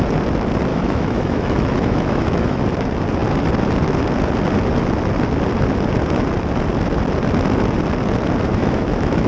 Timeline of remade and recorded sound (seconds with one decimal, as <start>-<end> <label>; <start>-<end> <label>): 0.0-0.7 recorded; 0.7-2.6 remade; 2.6-8.5 recorded; 8.5-9.3 remade